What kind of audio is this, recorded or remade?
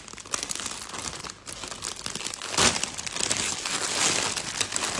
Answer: recorded